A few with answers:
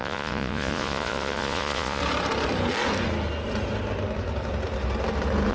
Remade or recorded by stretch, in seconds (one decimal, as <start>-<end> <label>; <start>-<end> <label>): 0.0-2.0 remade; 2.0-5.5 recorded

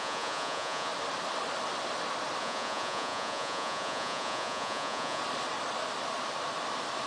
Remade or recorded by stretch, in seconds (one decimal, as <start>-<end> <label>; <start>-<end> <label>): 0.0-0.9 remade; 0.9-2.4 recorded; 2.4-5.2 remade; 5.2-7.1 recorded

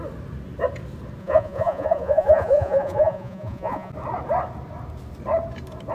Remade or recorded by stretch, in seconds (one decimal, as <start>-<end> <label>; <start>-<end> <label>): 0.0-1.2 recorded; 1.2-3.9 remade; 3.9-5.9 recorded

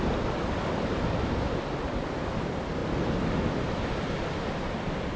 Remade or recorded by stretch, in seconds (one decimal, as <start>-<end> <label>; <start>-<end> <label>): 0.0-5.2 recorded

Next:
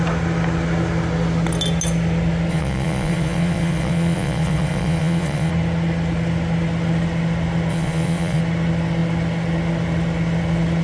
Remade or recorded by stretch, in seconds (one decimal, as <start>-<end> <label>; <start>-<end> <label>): 0.0-2.5 recorded; 2.5-5.5 remade; 5.5-7.7 recorded; 7.7-8.4 remade; 8.4-10.8 recorded